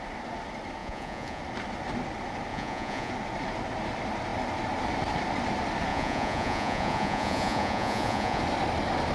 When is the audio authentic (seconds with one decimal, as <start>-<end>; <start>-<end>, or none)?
0.0-0.8; 1.4-2.5; 3.1-5.9; 8.4-9.1